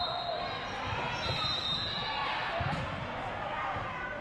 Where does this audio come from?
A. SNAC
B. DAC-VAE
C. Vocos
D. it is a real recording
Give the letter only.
D